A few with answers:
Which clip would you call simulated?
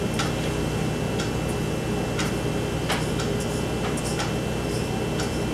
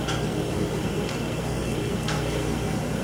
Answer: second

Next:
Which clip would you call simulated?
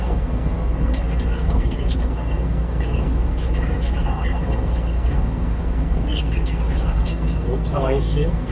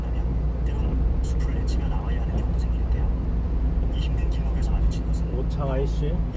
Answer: first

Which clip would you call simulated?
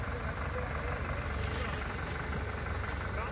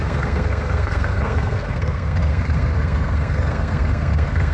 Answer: second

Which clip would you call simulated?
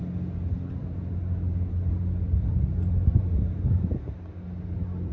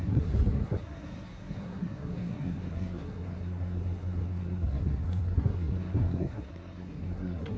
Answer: second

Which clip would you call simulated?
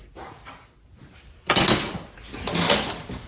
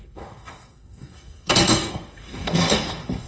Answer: second